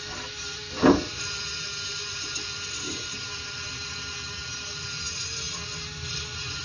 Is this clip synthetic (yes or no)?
no